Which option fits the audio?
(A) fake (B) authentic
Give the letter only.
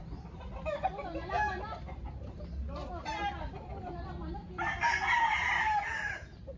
B